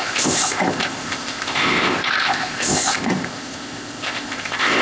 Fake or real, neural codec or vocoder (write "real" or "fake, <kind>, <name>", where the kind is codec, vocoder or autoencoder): fake, codec, ZipCodec